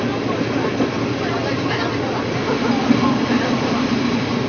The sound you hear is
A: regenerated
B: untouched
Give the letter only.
B